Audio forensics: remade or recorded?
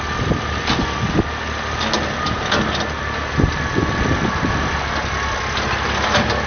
recorded